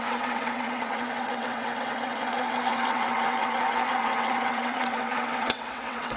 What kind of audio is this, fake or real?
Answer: fake